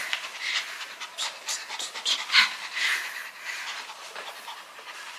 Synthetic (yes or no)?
no